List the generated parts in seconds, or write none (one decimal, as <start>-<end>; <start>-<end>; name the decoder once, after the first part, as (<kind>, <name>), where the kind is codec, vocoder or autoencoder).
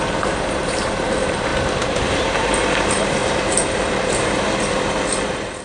0.0-5.6 (vocoder, BigVGAN v2)